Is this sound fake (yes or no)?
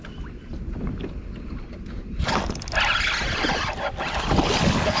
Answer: no